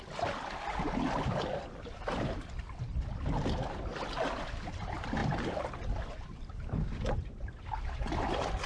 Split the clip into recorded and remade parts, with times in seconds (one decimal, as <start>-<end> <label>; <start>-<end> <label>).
0.0-8.7 recorded